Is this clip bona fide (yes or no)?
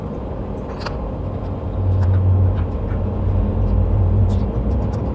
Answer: yes